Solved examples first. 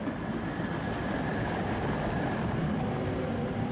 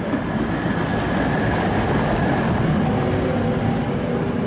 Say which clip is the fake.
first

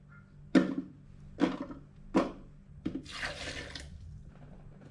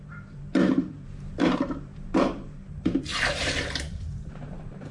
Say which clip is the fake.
second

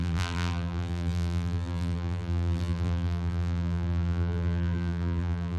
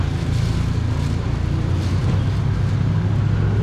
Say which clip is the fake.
first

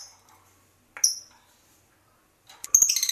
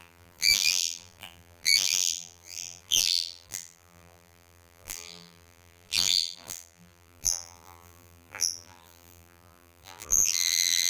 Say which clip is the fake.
second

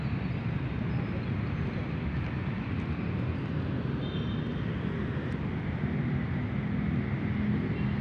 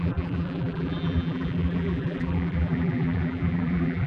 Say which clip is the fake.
second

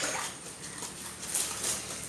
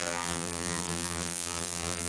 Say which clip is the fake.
second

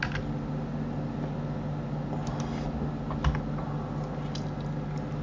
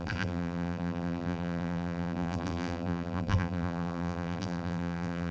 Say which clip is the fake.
second